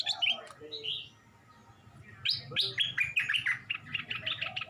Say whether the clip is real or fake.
real